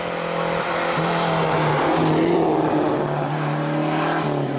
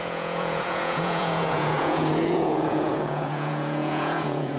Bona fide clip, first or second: first